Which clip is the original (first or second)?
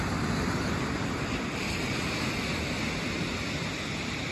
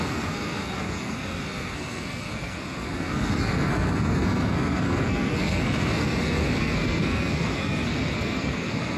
first